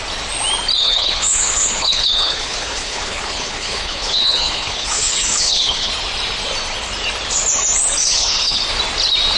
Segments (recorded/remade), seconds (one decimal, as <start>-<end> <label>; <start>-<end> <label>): 0.0-0.8 recorded; 0.8-5.9 remade; 5.9-8.0 recorded; 8.0-8.6 remade; 8.6-9.4 recorded